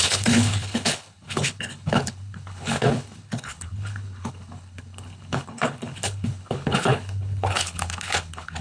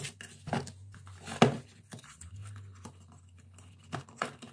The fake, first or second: first